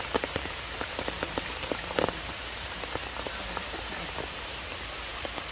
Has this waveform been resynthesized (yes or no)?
yes